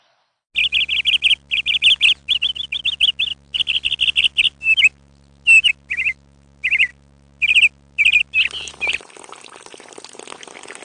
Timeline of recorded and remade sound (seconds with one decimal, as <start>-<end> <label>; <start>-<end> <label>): 0.0-10.8 recorded